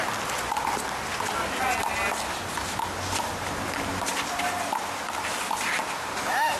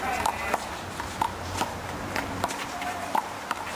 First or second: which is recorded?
first